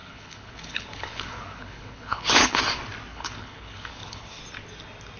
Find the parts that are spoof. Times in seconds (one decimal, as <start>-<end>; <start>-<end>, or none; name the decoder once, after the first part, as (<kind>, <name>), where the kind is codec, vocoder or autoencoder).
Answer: 0.0-2.6 (codec, HILCodec); 3.1-4.4